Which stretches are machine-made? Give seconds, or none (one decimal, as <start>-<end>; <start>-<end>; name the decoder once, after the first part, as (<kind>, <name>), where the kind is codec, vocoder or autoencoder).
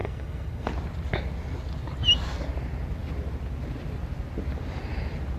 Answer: 0.0-0.7 (codec, SNAC)